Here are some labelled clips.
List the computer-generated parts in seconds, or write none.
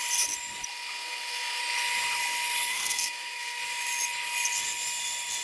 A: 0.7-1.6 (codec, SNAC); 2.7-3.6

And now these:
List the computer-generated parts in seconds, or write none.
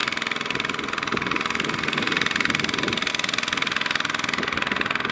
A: none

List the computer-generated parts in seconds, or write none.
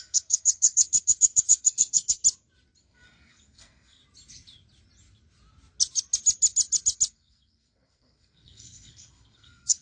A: 0.0-2.2 (codec, SNAC); 2.8-4.0; 7.1-9.8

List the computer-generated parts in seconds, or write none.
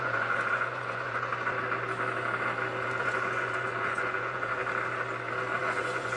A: 0.0-1.3 (vocoder, Vocos); 3.0-4.6; 5.6-6.2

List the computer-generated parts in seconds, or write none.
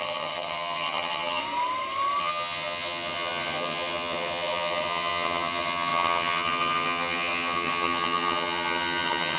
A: 0.0-1.4 (vocoder, HiFi-GAN); 2.2-9.4